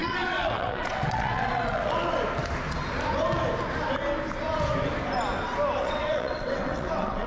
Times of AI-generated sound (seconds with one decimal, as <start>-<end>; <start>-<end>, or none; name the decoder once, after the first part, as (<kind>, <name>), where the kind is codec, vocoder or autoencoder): 0.0-2.2 (vocoder, WaveNeXt); 5.8-7.3